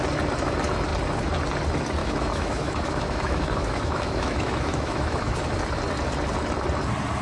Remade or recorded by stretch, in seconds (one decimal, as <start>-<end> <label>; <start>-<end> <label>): 0.0-2.0 recorded; 2.0-5.4 remade; 5.4-7.2 recorded